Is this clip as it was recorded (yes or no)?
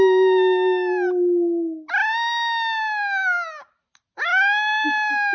yes